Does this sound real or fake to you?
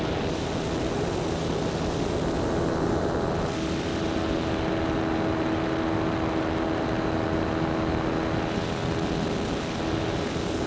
real